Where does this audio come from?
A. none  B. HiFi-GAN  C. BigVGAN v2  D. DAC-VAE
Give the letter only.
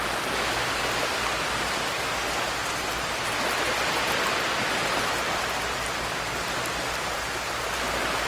A